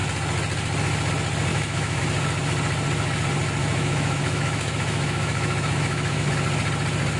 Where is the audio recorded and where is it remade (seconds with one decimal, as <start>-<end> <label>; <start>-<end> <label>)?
0.0-1.5 recorded; 1.5-2.0 remade; 2.0-3.6 recorded; 3.6-6.3 remade; 6.3-7.2 recorded